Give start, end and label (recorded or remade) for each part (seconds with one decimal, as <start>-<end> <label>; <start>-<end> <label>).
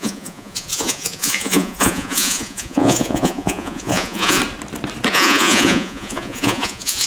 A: 0.0-4.4 remade; 4.4-5.1 recorded; 5.1-7.1 remade